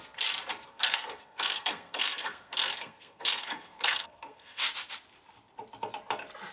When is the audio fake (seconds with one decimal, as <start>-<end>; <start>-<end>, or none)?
0.7-4.6